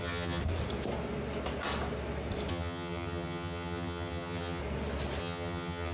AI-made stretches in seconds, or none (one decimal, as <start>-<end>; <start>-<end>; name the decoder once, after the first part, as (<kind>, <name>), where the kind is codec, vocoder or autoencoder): 0.0-0.4 (vocoder, HiFi-GAN); 2.5-4.6; 5.2-5.9

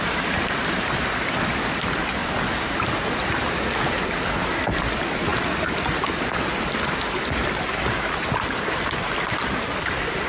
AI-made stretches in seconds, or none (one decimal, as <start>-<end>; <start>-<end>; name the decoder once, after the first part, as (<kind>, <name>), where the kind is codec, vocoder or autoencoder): none

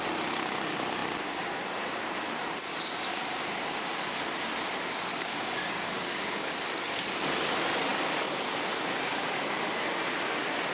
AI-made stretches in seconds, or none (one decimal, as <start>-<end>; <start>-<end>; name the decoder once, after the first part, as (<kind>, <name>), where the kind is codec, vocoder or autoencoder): 5.1-6.5 (codec, DAC)

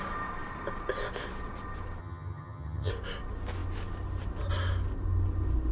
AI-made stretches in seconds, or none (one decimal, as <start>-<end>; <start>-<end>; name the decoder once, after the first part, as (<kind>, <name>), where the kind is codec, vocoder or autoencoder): 2.0-2.9 (vocoder, HiFi-GAN)

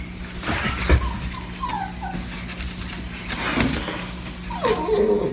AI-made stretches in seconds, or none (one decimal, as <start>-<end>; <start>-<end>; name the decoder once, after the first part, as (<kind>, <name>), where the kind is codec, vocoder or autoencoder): none

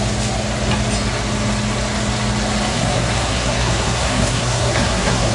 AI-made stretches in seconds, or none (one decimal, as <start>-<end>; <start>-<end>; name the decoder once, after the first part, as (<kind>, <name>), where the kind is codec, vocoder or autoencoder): 2.7-5.3 (codec, SNAC)

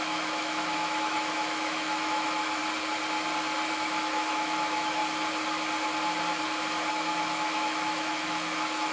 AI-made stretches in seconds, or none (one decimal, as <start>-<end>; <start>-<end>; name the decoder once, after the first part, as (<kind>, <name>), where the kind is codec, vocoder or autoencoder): 0.0-2.6 (autoencoder, DAC-VAE); 3.7-5.0; 6.9-8.9